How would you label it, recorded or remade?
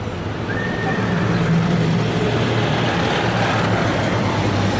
recorded